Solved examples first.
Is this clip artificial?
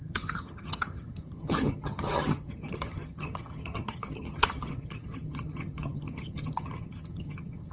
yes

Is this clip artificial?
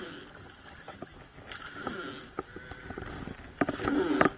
no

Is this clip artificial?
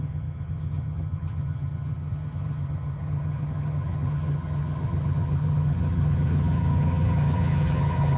yes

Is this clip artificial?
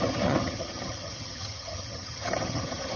yes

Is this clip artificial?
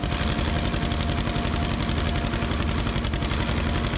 no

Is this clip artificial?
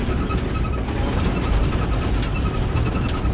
no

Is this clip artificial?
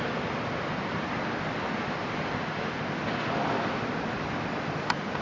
no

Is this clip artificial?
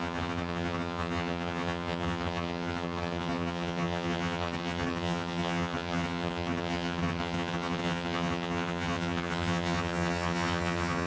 yes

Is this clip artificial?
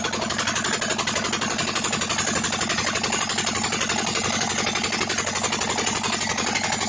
no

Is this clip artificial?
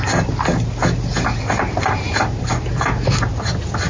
no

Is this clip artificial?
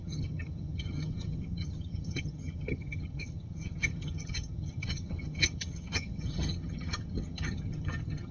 yes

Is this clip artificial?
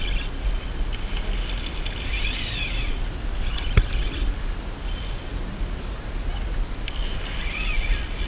no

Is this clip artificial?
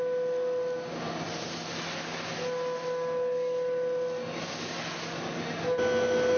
no